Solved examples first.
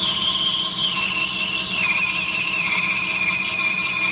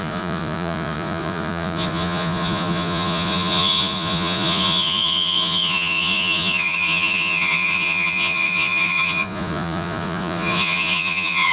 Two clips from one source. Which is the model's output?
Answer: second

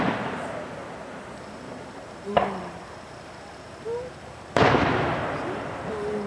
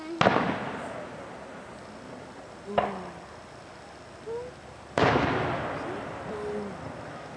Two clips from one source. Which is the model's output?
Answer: first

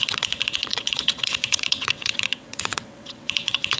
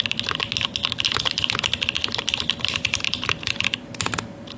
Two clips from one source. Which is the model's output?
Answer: first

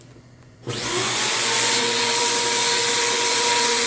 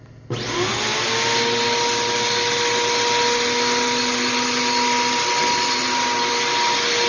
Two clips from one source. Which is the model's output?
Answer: first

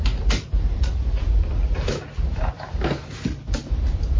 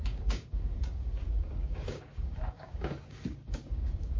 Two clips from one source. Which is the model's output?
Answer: second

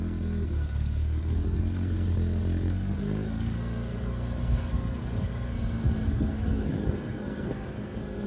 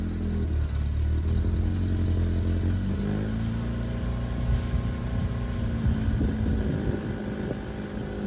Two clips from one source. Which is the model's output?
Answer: first